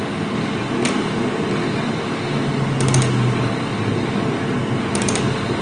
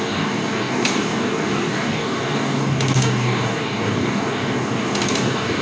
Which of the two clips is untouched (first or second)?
first